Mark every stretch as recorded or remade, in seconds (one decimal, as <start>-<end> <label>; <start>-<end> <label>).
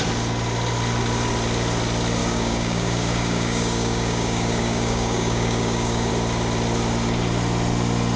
0.0-2.2 recorded; 2.2-6.1 remade; 6.1-8.2 recorded